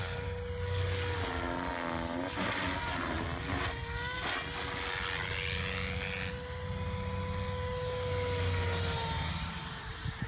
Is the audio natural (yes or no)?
yes